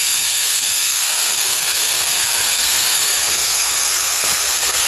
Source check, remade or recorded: remade